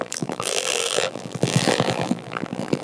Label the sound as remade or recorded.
remade